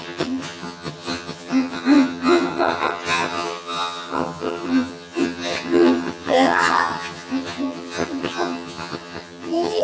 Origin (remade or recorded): remade